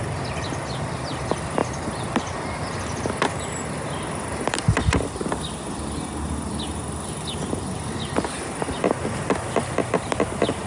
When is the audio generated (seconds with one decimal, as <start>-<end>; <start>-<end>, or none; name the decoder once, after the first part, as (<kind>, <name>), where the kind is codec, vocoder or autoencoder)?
none